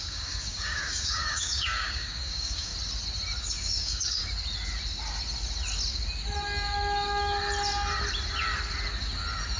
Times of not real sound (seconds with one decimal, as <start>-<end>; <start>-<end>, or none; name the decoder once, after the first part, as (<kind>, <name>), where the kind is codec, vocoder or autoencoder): 0.0-2.7 (codec, DAC); 3.4-4.2